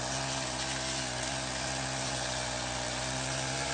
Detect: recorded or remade recorded